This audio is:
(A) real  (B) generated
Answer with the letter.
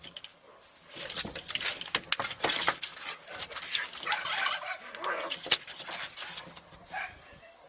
A